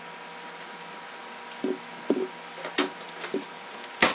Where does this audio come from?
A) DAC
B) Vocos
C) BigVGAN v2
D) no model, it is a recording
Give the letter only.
D